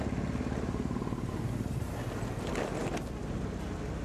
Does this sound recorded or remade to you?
recorded